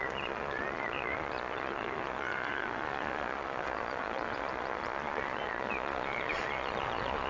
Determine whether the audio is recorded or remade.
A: remade